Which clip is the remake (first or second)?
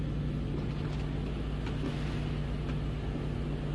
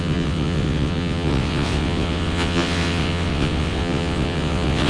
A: second